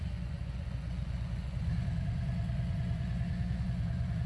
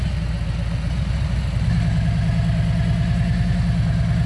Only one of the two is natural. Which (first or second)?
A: second